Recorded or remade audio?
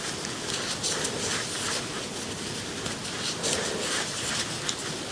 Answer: recorded